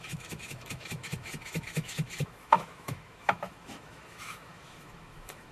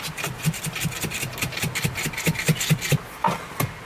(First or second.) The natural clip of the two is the second